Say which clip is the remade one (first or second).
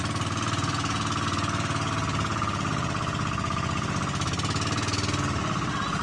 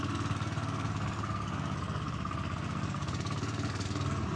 second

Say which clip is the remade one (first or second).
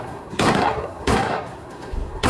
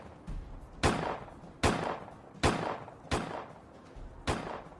first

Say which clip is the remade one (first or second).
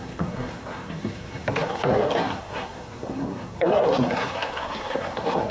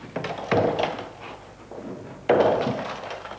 first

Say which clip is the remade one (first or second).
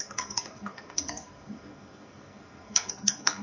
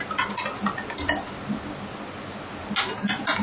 first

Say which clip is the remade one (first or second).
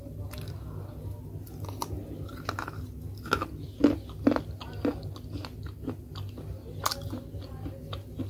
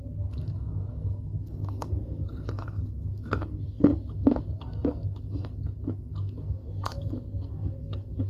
second